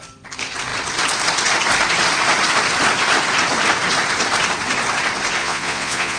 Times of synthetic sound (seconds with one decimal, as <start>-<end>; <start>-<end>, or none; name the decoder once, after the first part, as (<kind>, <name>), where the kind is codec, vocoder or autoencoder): 5.4-6.2 (vocoder, Vocos)